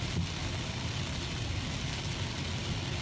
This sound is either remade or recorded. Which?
recorded